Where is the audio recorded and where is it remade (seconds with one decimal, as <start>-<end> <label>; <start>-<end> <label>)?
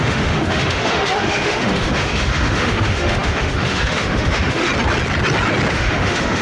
0.0-4.7 remade; 4.7-5.7 recorded; 5.7-6.4 remade